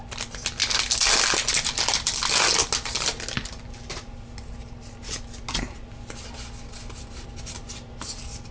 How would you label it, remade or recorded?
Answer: recorded